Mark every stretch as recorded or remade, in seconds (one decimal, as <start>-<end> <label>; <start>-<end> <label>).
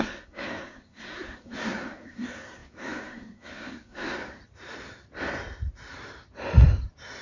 0.0-4.4 remade; 4.4-7.2 recorded